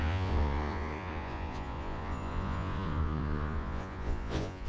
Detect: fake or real fake